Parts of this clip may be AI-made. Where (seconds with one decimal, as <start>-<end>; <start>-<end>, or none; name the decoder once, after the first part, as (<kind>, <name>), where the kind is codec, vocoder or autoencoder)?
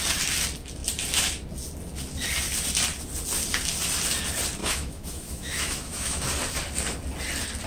4.6-6.2 (autoencoder, DAC-VAE)